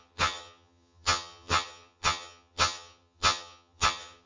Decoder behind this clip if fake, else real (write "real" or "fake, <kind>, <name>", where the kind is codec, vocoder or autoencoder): fake, vocoder, HiFi-GAN